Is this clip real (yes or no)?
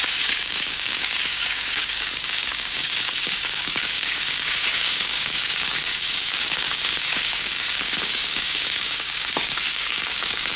no